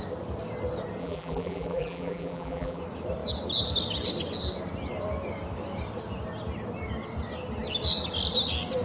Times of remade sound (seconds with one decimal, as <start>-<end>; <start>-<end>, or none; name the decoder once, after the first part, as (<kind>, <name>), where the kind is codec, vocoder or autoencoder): 1.0-2.8 (vocoder, BigVGAN v2)